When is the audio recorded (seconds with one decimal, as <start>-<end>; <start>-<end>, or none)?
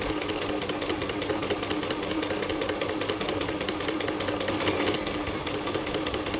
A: 0.0-6.4